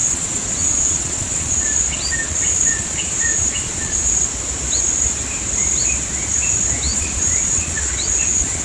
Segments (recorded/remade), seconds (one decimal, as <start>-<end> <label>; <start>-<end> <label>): 0.0-4.1 remade; 4.1-6.9 recorded; 6.9-8.6 remade